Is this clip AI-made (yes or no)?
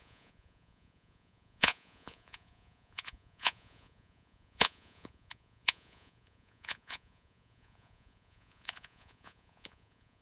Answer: yes